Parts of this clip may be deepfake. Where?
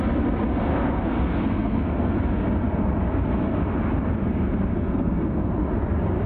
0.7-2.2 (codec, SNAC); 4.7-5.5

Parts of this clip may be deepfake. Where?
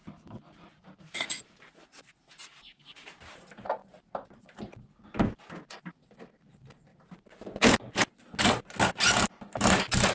none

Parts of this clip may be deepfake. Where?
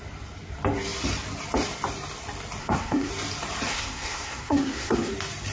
2.6-3.1 (codec, SNAC); 3.7-5.1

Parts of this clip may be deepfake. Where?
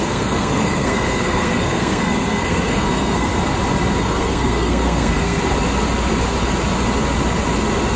0.0-3.3 (codec, SNAC); 4.0-5.4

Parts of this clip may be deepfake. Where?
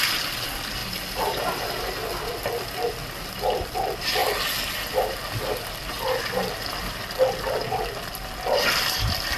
0.0-0.8 (vocoder, BigVGAN v2); 3.2-9.4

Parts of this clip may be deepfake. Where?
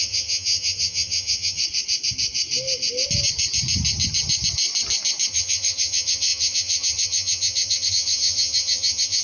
0.0-1.6 (vocoder, HiFi-GAN); 5.3-9.2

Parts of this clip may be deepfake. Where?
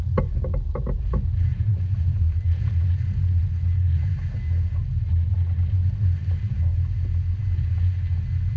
1.5-3.4 (vocoder, BigVGAN v2)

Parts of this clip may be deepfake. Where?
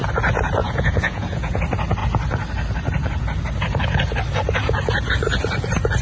0.6-1.6 (vocoder, Vocos)